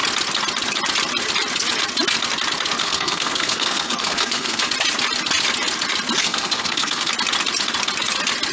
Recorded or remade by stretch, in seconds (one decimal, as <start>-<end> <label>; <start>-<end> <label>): 0.0-2.8 recorded; 2.8-4.7 remade; 4.7-6.2 recorded; 6.2-7.1 remade; 7.1-8.5 recorded